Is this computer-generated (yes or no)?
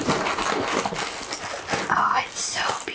no